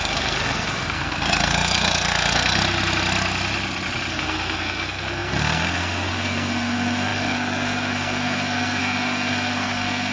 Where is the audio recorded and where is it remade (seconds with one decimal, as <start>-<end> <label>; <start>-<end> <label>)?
0.0-2.6 remade; 2.6-4.1 recorded; 4.1-10.1 remade